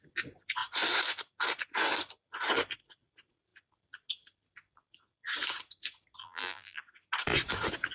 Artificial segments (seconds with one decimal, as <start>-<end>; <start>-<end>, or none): 6.2-6.8